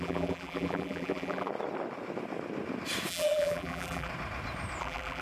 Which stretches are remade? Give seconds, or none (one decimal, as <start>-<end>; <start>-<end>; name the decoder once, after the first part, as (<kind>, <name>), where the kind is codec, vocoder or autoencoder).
0.0-1.5 (vocoder, BigVGAN v2); 3.1-4.1; 4.8-5.2